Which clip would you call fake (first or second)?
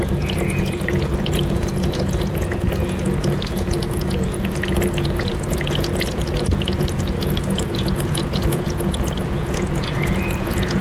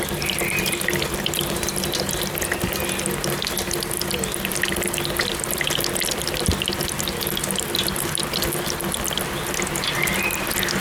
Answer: first